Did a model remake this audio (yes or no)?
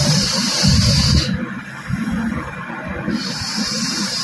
yes